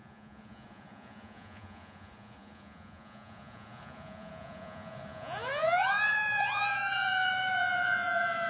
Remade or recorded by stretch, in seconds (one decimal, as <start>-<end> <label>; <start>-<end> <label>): 0.0-8.5 remade